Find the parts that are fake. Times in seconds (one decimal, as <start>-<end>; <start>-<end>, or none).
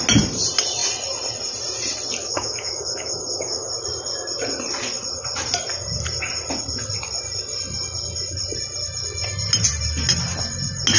2.2-3.7